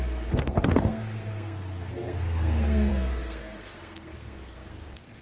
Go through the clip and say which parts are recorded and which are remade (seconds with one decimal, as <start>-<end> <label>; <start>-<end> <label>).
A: 0.0-5.2 remade